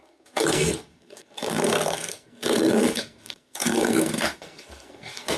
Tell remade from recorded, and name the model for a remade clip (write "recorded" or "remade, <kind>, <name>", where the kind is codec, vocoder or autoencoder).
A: remade, codec, SNAC